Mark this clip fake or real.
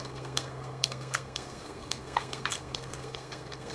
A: fake